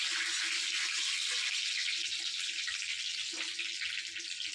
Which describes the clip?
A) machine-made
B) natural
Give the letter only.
B